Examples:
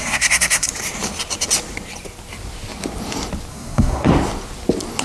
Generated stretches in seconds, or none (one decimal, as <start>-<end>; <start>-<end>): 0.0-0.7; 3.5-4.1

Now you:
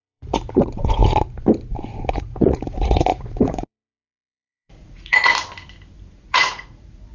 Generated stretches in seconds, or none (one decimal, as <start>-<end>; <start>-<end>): 0.0-1.0; 1.8-5.3; 6.1-7.1

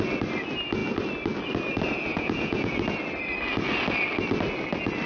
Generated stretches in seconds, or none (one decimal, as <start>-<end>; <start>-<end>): 2.1-2.7

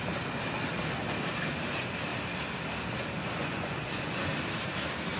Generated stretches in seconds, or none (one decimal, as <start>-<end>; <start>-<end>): 3.2-4.3